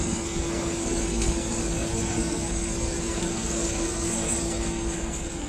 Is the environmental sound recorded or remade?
remade